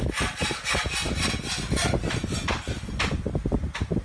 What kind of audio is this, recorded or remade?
recorded